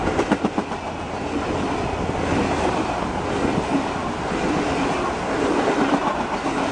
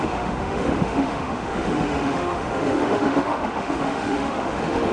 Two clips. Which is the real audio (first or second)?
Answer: first